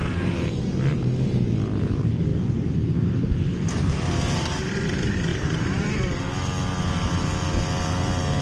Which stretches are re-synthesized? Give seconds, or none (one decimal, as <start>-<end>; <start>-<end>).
0.0-0.7; 2.3-4.6; 5.3-6.1